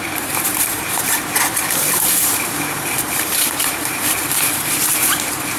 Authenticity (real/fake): fake